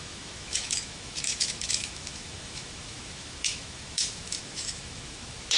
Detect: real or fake fake